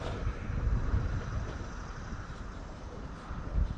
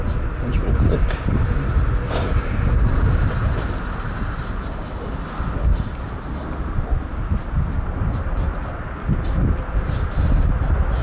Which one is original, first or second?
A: second